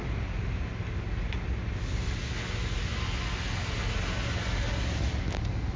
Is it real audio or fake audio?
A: real